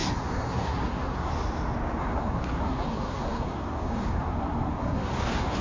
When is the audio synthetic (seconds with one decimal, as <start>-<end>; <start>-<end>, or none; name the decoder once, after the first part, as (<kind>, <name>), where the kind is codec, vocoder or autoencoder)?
0.0-1.3 (codec, SNAC); 2.0-5.6